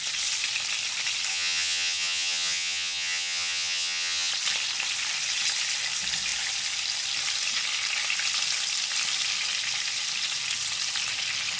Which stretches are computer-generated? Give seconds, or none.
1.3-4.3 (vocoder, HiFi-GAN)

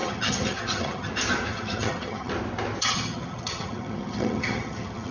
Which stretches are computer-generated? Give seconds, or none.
0.0-1.1 (vocoder, HiFi-GAN); 1.5-2.3; 2.8-5.1